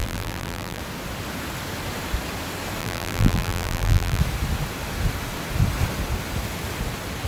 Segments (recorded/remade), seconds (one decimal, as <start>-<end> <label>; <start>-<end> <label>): 0.0-0.8 remade; 0.8-2.8 recorded; 2.8-4.2 remade; 4.2-7.3 recorded